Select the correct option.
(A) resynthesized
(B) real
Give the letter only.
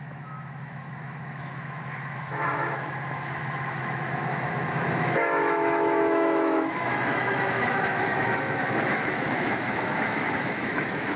A